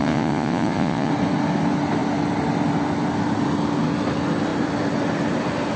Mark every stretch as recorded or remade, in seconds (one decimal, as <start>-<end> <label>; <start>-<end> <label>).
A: 0.0-1.1 remade; 1.1-5.8 recorded

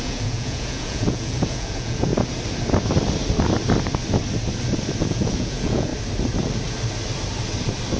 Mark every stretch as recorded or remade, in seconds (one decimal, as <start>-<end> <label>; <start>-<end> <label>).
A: 0.0-2.1 remade; 2.1-5.0 recorded; 5.0-5.9 remade; 5.9-8.0 recorded

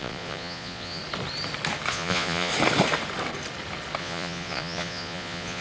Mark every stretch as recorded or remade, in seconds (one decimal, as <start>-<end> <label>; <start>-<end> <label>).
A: 0.0-1.0 remade; 1.0-1.9 recorded; 1.9-2.5 remade; 2.5-4.0 recorded; 4.0-5.6 remade

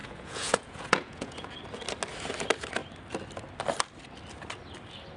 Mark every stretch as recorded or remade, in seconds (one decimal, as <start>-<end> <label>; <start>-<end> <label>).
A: 0.0-1.5 remade; 1.5-5.2 recorded

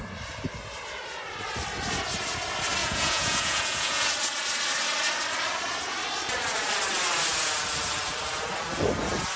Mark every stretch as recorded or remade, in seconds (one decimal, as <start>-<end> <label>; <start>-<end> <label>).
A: 0.0-2.8 recorded; 2.8-4.1 remade; 4.1-9.4 recorded